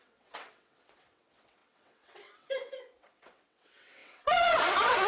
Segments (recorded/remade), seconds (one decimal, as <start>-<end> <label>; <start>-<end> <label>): 0.0-5.1 remade